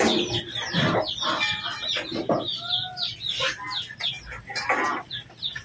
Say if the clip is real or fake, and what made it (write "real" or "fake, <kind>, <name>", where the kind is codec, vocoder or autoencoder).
real